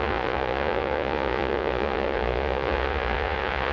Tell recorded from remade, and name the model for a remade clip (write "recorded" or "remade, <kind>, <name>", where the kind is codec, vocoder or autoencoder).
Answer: remade, vocoder, Vocos